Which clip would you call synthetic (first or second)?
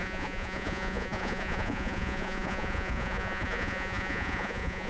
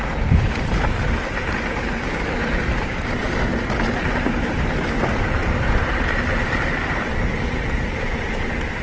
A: first